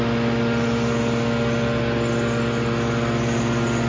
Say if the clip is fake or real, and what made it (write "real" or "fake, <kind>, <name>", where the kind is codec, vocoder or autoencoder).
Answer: real